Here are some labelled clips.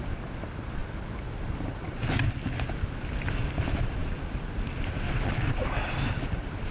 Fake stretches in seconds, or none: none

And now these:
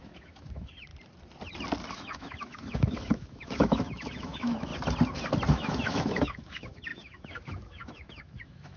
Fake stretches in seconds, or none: 0.0-0.9; 1.9-4.7; 5.5-8.8

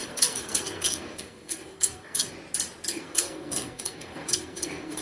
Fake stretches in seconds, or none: 0.0-2.3; 2.9-5.0